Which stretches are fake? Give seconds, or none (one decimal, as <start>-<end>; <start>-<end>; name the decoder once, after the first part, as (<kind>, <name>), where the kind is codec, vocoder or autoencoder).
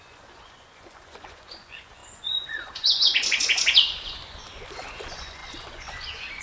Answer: 0.0-6.4 (vocoder, Vocos)